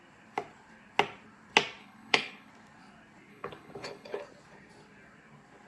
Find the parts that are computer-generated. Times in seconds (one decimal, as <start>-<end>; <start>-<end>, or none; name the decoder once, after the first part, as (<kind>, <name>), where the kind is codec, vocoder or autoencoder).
1.8-2.5 (codec, HILCodec); 3.3-4.2